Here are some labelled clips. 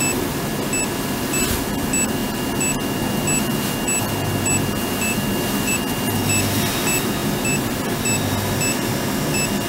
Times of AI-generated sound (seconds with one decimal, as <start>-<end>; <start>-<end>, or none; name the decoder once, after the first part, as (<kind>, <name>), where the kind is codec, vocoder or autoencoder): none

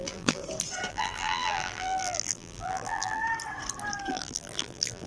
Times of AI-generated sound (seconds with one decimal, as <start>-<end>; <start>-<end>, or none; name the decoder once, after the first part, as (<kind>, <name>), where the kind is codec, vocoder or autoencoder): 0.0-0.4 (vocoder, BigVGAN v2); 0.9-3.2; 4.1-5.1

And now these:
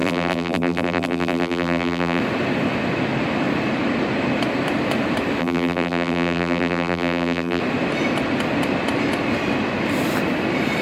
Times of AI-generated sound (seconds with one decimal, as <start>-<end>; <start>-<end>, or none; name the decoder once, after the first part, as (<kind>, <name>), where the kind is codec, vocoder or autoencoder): 0.0-2.2 (vocoder, BigVGAN v2); 5.4-7.6

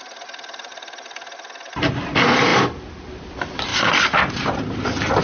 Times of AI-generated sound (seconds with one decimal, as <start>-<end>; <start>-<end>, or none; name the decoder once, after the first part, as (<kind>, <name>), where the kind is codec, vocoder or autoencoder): 3.7-5.2 (vocoder, BigVGAN v2)

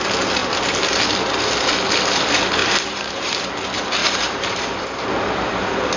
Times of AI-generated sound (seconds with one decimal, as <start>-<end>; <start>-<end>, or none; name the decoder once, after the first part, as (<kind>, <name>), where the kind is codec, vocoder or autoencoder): 2.6-3.4 (vocoder, BigVGAN v2); 4.0-4.6